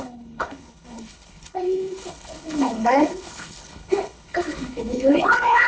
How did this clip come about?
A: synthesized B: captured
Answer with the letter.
A